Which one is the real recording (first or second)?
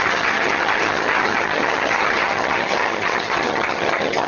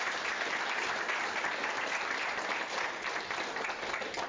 second